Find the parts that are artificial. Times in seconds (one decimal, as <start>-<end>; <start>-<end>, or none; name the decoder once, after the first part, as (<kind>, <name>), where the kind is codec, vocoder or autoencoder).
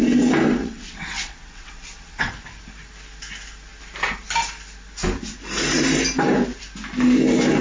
0.6-2.3 (vocoder, WaveNeXt)